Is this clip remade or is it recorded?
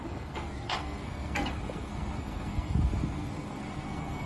remade